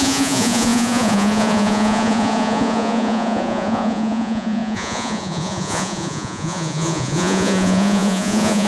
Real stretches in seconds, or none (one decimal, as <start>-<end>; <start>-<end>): none